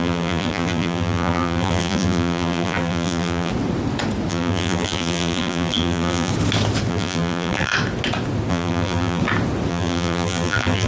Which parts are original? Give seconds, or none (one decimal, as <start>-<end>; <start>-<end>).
3.5-4.3; 6.3-6.9; 7.7-8.5; 9.2-9.7